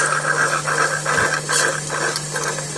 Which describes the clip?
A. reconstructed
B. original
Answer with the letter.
B